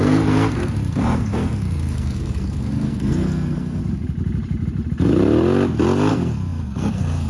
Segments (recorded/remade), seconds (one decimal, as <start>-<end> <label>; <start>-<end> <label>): 0.0-3.8 remade; 3.8-6.1 recorded; 6.1-7.3 remade